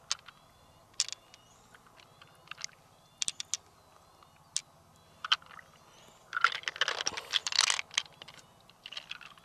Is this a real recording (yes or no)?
yes